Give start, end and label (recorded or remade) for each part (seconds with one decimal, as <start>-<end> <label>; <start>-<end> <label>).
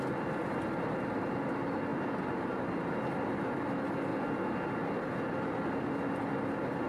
0.0-1.9 recorded; 1.9-2.6 remade; 2.6-6.9 recorded